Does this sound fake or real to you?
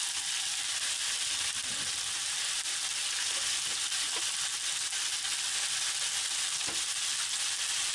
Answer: real